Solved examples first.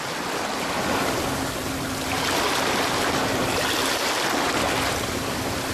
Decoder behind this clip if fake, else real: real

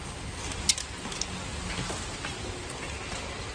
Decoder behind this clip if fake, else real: real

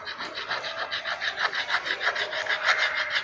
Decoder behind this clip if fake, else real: real